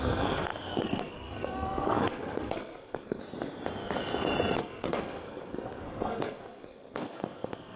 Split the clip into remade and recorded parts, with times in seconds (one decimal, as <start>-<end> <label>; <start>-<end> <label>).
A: 0.0-3.2 remade; 3.2-4.6 recorded; 4.6-7.8 remade